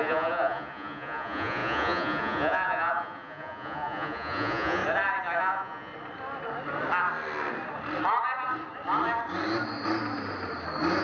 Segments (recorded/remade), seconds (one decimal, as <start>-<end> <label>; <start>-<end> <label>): 0.0-4.8 remade; 4.8-5.4 recorded; 5.4-5.9 remade; 5.9-11.0 recorded